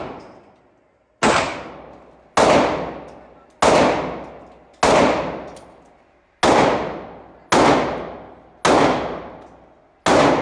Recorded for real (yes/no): yes